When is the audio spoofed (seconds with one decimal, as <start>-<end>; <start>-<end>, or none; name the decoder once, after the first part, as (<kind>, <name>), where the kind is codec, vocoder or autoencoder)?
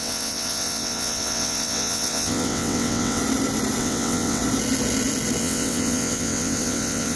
0.0-3.2 (vocoder, WaveNeXt); 3.8-4.4; 5.4-7.2